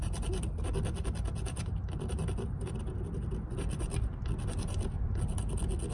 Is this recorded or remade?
recorded